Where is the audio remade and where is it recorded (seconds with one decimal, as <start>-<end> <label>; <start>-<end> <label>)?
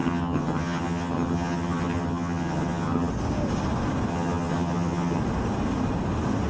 0.0-3.1 remade; 3.1-4.1 recorded; 4.1-5.2 remade; 5.2-6.5 recorded